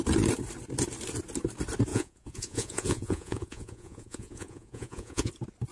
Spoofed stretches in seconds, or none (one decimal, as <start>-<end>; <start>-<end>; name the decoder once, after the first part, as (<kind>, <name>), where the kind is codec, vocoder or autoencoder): 1.9-5.3 (vocoder, Vocos)